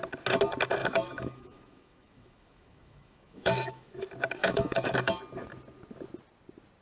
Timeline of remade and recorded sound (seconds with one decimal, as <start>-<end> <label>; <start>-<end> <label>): 0.0-0.8 recorded; 0.8-4.0 remade; 4.0-4.4 recorded; 4.4-5.2 remade; 5.2-6.8 recorded